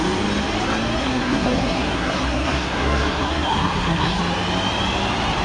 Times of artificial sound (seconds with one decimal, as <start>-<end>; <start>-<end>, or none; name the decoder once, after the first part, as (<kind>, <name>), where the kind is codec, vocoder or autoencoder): 1.0-4.2 (codec, SNAC)